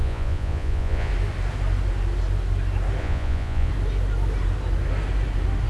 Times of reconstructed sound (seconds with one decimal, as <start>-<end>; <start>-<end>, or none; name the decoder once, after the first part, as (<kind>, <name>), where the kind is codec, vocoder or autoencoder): 0.0-1.1 (vocoder, Vocos); 3.0-3.7